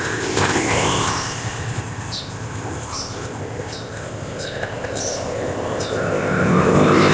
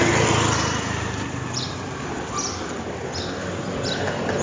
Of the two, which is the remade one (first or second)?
first